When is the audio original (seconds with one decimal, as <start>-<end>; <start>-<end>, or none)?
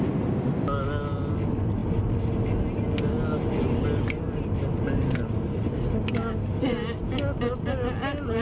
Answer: 0.0-8.4